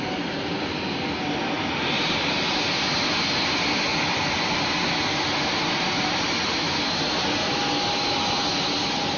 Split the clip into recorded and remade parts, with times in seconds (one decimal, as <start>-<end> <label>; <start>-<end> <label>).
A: 0.0-9.2 recorded